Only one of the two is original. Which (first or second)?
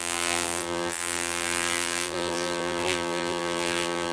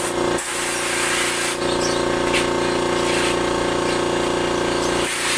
second